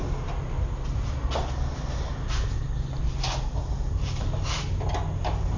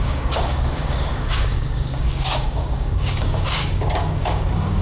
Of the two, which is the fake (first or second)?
second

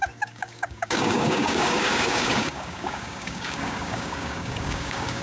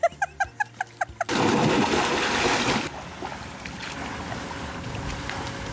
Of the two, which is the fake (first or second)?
first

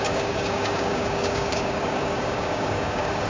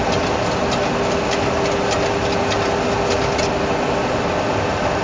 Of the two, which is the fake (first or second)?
first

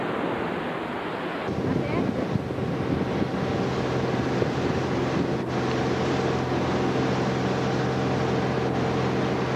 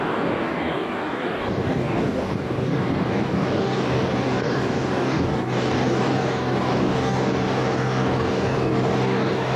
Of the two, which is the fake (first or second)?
second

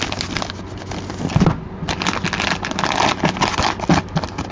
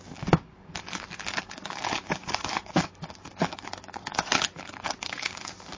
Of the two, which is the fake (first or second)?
second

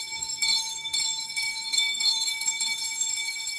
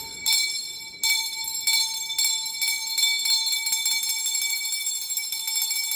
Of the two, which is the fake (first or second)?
first